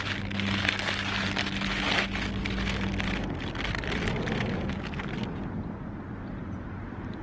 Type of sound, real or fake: real